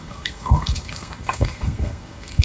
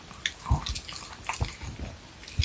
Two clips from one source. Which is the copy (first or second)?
first